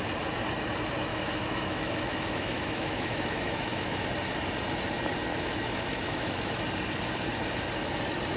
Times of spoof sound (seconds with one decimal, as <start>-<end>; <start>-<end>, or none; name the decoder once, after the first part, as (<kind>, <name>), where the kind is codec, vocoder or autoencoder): 1.1-4.0 (autoencoder, DAC-VAE); 5.3-6.6